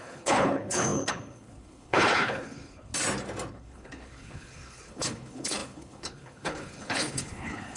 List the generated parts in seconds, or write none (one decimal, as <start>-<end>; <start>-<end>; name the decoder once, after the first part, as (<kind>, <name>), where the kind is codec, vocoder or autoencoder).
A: 0.0-2.9 (codec, HILCodec); 3.5-7.8